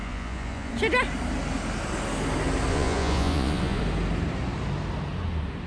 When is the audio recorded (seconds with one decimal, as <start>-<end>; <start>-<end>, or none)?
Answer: 0.7-2.7; 3.8-5.7